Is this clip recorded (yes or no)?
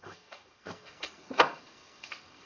no